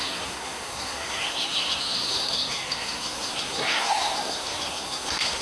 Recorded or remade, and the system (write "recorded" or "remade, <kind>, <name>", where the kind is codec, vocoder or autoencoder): remade, codec, SNAC